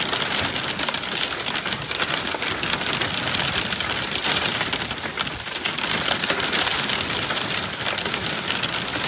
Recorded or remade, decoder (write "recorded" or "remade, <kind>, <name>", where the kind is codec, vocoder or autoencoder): recorded